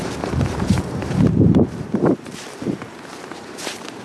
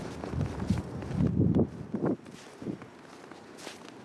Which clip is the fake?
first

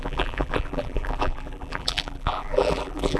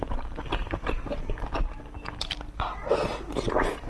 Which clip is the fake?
first